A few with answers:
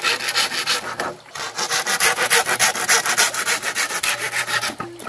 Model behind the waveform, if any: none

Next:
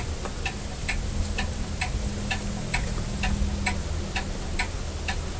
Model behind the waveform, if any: none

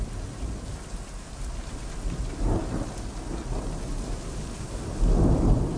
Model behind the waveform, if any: none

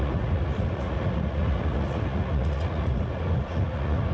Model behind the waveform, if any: vocoder, Vocos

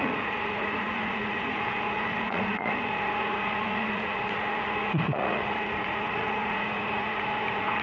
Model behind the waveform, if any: vocoder, Vocos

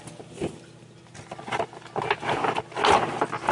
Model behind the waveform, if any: none